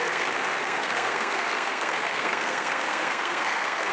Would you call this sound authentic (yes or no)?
no